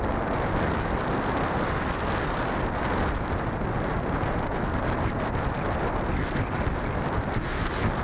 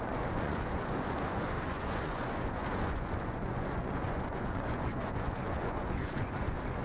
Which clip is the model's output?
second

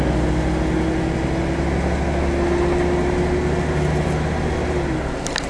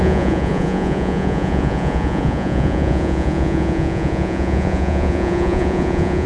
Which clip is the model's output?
second